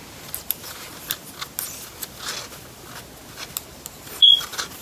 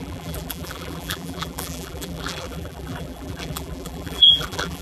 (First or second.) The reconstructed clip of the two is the second